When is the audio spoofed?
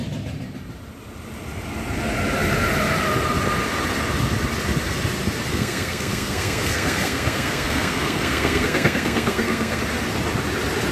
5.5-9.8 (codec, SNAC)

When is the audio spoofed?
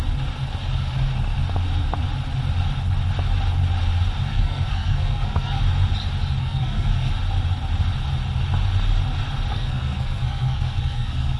4.3-5.6 (codec, SNAC); 6.4-7.1; 9.5-11.4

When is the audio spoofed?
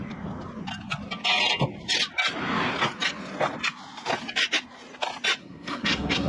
5.4-6.3 (codec, SNAC)